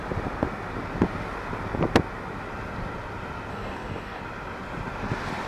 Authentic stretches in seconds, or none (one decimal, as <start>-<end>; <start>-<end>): 0.0-3.5; 4.2-5.5